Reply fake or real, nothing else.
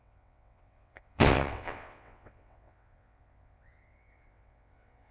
fake